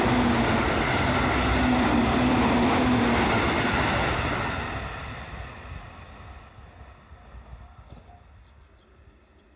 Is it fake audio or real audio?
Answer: real